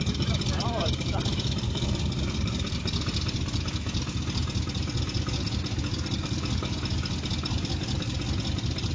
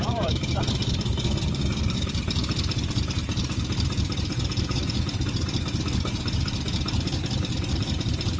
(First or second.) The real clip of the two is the first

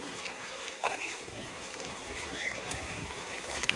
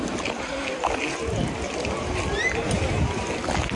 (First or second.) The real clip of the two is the second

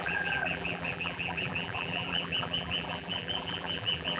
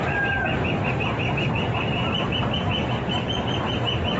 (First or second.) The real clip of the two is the second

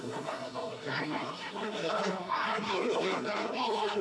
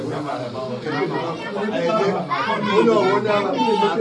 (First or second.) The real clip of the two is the second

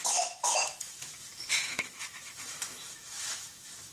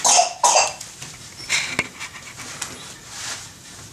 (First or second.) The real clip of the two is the second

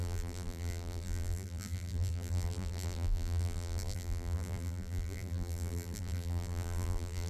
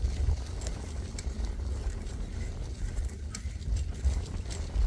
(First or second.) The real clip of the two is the second